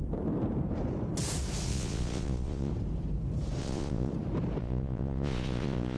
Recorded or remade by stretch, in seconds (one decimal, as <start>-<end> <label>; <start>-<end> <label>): 0.0-1.7 recorded; 1.7-2.7 remade; 2.7-3.6 recorded; 3.6-4.1 remade; 4.1-4.6 recorded; 4.6-6.0 remade

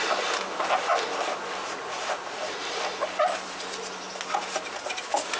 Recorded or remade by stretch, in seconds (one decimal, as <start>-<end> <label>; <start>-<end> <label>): 0.0-1.6 recorded; 1.6-2.4 remade; 2.4-5.4 recorded